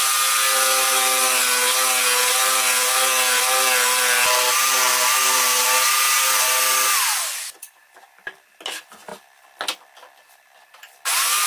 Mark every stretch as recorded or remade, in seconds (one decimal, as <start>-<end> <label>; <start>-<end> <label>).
0.0-11.5 recorded